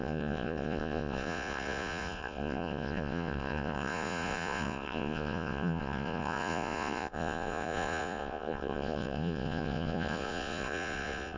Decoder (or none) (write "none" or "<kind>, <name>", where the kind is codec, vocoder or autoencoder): vocoder, Vocos